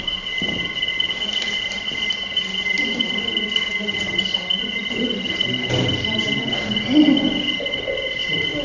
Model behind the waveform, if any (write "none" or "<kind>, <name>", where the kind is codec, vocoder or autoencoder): none